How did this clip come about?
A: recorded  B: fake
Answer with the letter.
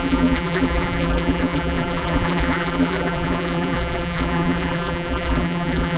B